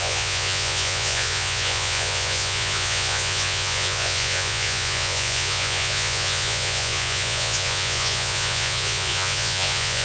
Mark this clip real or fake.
fake